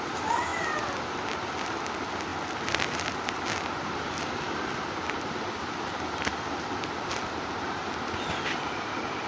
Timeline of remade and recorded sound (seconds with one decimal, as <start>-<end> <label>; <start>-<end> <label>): 0.0-9.3 recorded